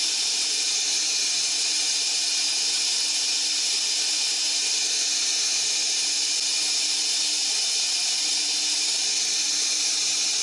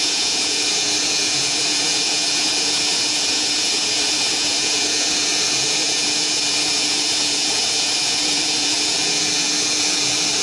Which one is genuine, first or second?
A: first